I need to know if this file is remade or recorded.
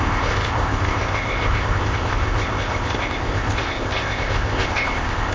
remade